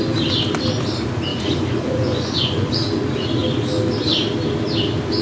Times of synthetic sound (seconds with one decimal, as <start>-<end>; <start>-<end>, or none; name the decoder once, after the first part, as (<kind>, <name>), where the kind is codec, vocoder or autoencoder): 1.3-2.7 (vocoder, Vocos)